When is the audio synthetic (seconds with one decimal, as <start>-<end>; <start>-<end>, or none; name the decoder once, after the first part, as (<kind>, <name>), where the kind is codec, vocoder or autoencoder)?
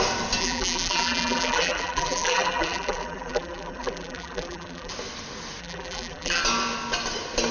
0.4-4.9 (vocoder, BigVGAN v2); 5.6-6.4